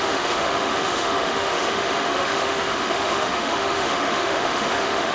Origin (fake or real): fake